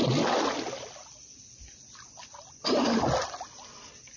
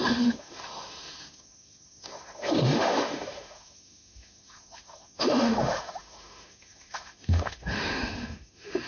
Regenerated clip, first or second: second